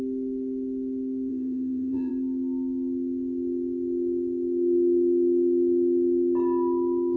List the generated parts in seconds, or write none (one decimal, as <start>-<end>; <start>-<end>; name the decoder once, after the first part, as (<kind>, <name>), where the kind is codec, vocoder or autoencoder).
1.3-2.1 (vocoder, BigVGAN v2)